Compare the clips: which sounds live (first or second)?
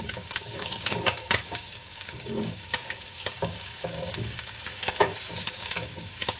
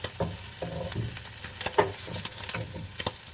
second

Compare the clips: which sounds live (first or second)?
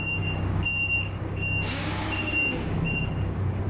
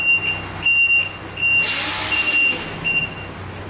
second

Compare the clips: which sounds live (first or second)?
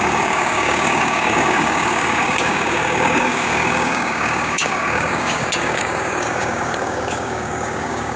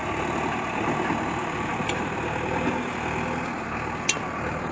second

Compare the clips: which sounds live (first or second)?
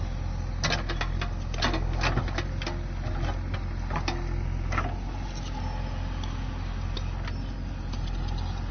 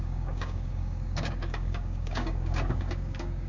first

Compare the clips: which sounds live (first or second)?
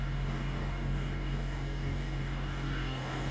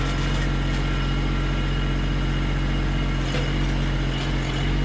second